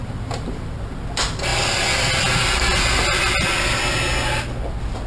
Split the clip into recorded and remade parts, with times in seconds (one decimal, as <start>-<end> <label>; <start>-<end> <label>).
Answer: 0.0-1.0 remade; 1.0-5.1 recorded